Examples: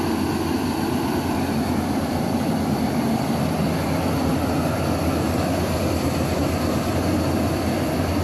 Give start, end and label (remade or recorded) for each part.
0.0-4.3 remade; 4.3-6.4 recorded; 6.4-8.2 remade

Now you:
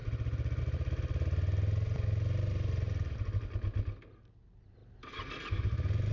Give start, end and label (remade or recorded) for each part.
0.0-6.1 recorded

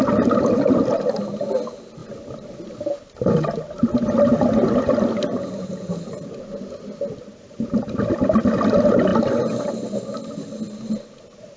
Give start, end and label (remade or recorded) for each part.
0.0-11.6 recorded

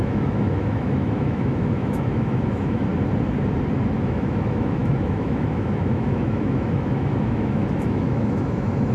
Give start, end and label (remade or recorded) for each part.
0.0-2.9 remade; 2.9-4.0 recorded; 4.0-8.9 remade